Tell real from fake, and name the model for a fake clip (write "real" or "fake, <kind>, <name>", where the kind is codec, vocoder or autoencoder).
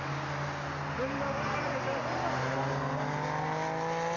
real